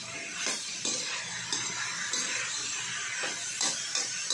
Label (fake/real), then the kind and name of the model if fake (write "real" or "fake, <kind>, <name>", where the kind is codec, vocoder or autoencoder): real